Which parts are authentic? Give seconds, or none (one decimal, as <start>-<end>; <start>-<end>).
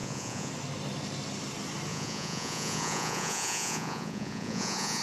0.5-1.9